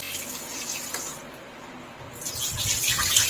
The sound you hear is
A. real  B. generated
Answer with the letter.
A